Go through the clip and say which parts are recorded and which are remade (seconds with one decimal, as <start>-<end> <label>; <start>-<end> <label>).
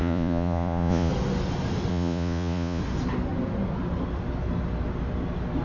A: 0.0-1.1 remade; 1.1-1.9 recorded; 1.9-2.8 remade; 2.8-5.6 recorded